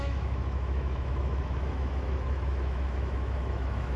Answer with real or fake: fake